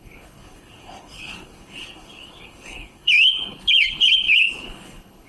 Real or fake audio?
fake